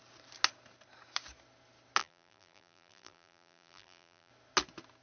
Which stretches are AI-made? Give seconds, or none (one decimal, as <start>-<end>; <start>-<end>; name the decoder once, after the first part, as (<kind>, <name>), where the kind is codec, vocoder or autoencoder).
2.0-4.3 (vocoder, BigVGAN v2)